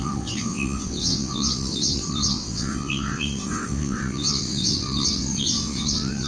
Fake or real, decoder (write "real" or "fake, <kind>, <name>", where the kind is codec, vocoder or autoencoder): fake, vocoder, WaveNeXt